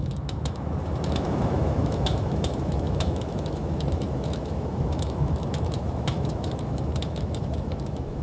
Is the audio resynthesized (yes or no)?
yes